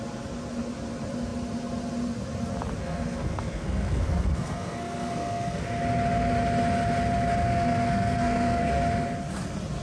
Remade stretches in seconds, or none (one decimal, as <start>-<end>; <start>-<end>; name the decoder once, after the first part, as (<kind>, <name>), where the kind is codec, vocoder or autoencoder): 2.8-5.6 (codec, SNAC); 7.4-8.7